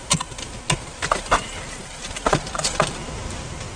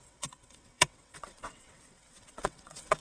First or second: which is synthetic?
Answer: second